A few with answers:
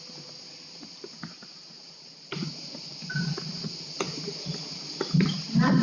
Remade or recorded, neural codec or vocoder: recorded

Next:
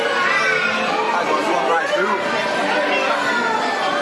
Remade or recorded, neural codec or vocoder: recorded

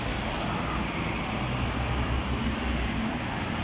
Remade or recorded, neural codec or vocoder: recorded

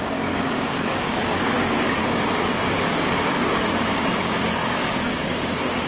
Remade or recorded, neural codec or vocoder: remade, codec, DAC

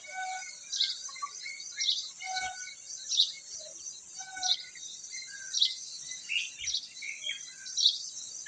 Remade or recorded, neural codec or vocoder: recorded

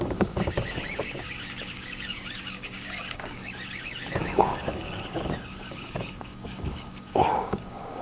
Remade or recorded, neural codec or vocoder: remade, codec, DAC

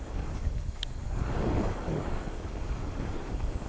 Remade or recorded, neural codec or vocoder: remade, codec, DAC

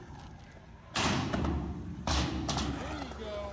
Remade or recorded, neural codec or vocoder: recorded